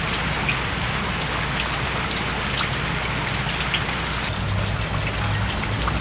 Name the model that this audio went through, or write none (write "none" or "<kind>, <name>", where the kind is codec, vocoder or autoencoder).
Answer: none